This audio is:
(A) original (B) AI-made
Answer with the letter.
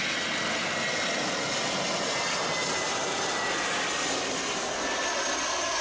A